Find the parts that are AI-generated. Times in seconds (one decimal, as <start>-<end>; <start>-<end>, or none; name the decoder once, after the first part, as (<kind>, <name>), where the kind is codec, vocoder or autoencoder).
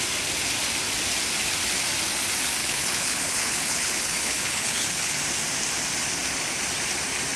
2.6-5.2 (codec, HILCodec)